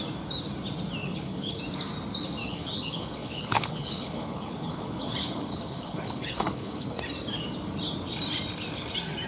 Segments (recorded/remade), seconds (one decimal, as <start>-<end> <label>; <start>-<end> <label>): 0.0-1.0 recorded; 1.0-1.6 remade; 1.6-2.4 recorded; 2.4-7.0 remade; 7.0-9.3 recorded